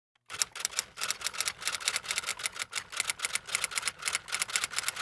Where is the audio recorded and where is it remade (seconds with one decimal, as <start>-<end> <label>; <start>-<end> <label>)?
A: 0.0-5.0 recorded